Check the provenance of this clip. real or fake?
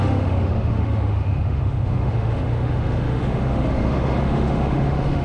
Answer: fake